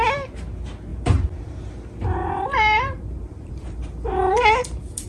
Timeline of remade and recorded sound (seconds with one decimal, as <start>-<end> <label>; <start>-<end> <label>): 0.0-0.9 recorded; 0.9-1.7 remade; 1.7-2.2 recorded; 2.2-5.1 remade